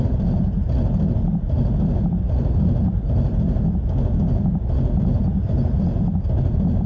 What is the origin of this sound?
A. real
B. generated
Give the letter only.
A